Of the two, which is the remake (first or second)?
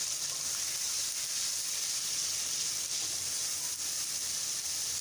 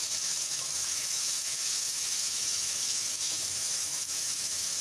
second